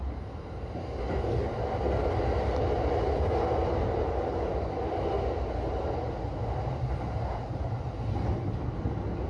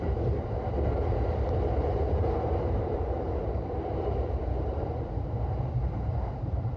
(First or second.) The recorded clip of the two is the first